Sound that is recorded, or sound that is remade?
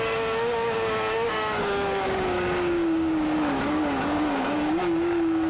remade